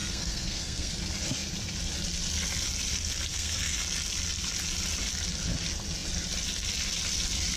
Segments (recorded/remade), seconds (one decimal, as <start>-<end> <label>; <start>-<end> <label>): 0.0-0.9 remade; 0.9-3.3 recorded; 3.3-3.8 remade; 3.8-7.6 recorded

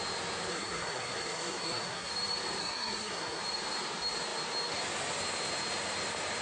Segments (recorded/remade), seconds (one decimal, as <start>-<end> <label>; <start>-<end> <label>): 0.0-0.5 recorded; 0.5-2.1 remade; 2.1-2.6 recorded; 2.6-3.4 remade; 3.4-6.4 recorded

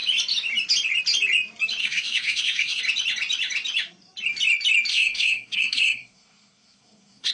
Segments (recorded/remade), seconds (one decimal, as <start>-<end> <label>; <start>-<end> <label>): 0.0-1.8 recorded; 1.8-2.8 remade; 2.8-4.9 recorded; 4.9-7.3 remade

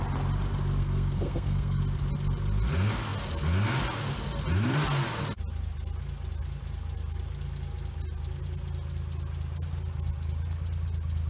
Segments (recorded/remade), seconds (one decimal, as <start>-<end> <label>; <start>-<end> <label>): 0.0-0.8 recorded; 0.8-1.8 remade; 1.8-11.3 recorded